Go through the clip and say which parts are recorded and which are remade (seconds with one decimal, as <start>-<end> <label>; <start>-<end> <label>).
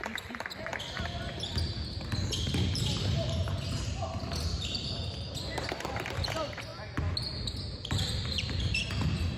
0.0-0.7 remade; 0.7-2.2 recorded; 2.2-6.7 remade; 6.7-7.4 recorded; 7.4-9.4 remade